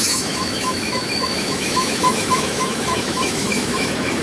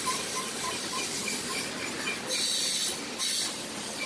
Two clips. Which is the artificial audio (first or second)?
first